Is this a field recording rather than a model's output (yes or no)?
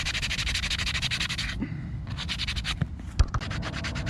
yes